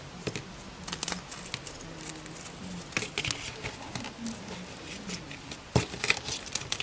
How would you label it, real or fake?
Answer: real